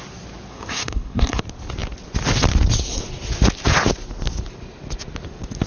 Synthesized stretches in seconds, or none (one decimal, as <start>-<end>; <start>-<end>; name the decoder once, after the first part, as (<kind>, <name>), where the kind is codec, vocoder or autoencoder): 0.5-1.4 (codec, SNAC)